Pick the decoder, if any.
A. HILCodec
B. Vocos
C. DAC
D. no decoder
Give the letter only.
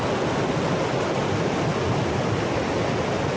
D